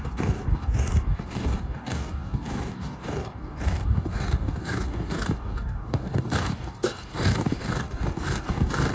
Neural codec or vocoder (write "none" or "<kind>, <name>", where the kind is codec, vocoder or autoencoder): codec, DAC